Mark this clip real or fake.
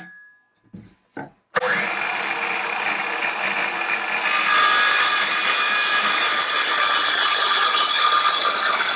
real